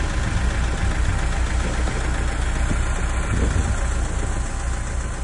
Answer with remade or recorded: recorded